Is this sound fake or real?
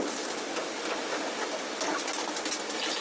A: real